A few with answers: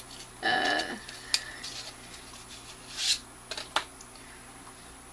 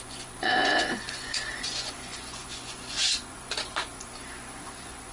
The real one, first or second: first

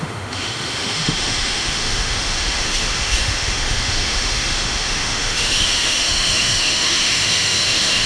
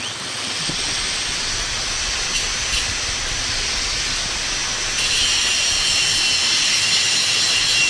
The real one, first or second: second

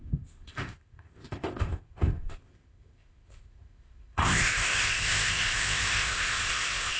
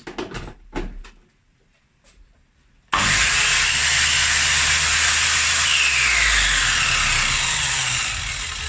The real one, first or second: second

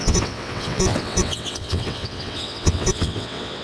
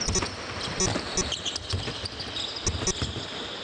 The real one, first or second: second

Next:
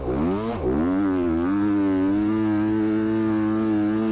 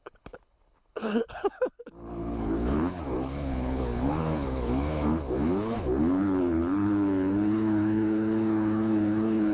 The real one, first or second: first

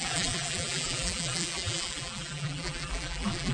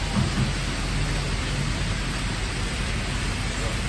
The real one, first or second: second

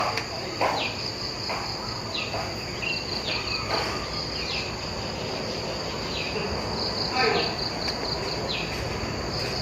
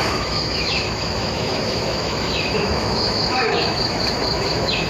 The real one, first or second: first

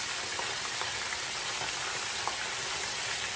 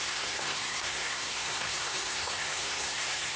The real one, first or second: first